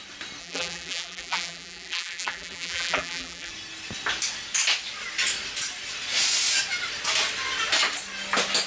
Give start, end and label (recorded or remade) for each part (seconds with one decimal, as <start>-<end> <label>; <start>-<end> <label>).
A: 0.0-0.4 recorded; 0.4-3.5 remade; 3.5-8.7 recorded